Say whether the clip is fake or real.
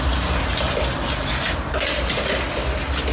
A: real